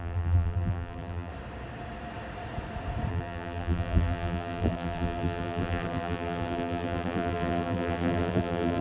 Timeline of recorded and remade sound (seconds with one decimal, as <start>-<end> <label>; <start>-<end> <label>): 0.0-1.3 remade; 1.3-3.1 recorded; 3.1-8.8 remade